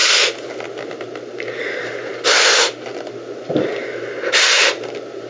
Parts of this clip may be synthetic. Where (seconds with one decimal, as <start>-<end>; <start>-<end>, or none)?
none